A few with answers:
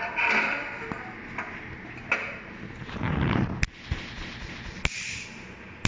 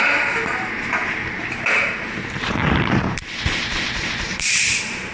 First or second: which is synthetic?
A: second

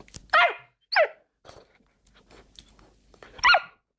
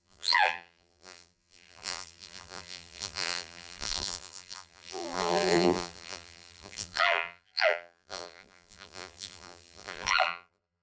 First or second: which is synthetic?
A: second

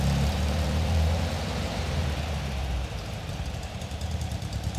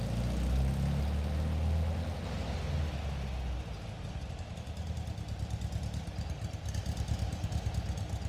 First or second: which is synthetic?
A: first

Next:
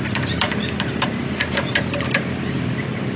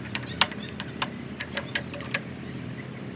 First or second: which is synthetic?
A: first